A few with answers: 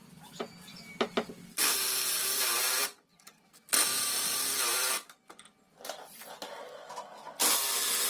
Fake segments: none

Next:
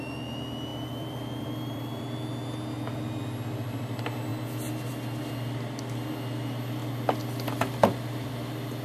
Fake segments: 0.7-2.0 (vocoder, BigVGAN v2); 6.8-8.3

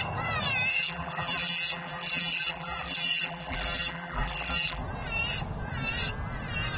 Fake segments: 0.7-4.8 (vocoder, BigVGAN v2)